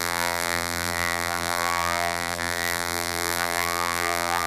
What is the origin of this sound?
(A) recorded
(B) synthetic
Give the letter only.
B